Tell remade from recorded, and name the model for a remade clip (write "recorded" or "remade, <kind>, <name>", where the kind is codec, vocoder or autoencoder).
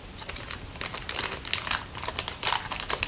recorded